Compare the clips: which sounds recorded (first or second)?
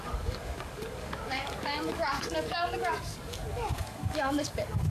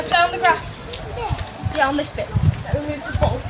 second